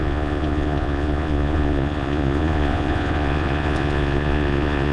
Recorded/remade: remade